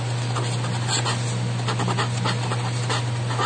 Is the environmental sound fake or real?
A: real